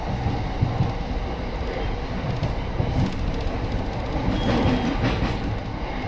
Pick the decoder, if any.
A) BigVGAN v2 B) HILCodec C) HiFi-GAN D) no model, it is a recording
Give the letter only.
D